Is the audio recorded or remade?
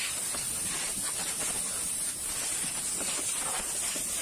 recorded